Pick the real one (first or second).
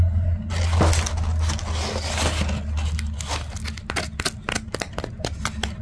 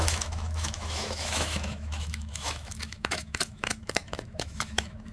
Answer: first